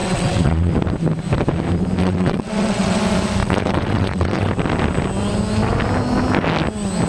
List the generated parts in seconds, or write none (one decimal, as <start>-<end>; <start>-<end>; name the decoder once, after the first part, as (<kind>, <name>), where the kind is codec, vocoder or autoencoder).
0.0-0.7 (vocoder, WaveNeXt); 2.0-3.0; 3.4-4.5